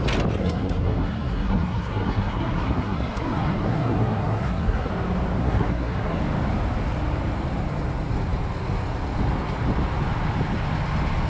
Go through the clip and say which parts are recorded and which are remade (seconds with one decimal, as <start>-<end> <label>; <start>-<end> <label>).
0.0-0.4 recorded; 0.4-4.9 remade; 4.9-5.4 recorded; 5.4-6.2 remade; 6.2-11.3 recorded